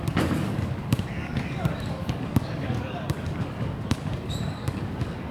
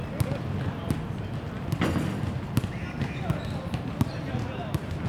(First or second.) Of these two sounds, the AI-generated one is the first